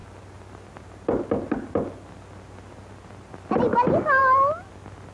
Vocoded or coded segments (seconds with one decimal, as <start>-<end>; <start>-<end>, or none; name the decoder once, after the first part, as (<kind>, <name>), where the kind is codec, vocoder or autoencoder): none